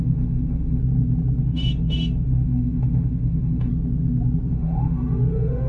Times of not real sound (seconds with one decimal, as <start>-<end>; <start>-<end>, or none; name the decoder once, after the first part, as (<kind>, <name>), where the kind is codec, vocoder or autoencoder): 0.0-0.8 (autoencoder, DAC-VAE); 1.4-3.7; 4.5-5.7